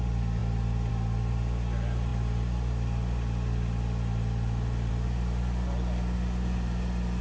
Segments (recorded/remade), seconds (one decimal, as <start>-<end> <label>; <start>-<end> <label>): 0.0-7.2 recorded